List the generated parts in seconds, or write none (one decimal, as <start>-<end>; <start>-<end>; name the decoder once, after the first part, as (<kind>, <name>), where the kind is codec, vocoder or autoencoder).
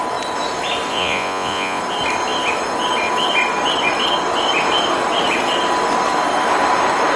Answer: 0.9-1.8 (vocoder, Vocos)